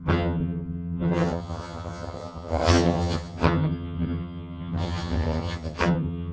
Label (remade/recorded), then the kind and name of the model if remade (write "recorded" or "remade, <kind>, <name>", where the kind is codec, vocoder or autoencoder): remade, vocoder, HiFi-GAN